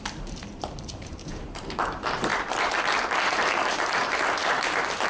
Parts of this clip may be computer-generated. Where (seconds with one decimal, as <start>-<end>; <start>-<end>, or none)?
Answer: 0.0-5.1